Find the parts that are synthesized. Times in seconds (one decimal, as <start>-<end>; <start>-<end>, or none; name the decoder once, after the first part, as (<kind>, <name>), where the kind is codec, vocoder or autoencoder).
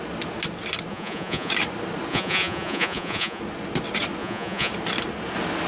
0.9-1.5 (vocoder, Vocos); 2.1-3.4; 4.2-4.7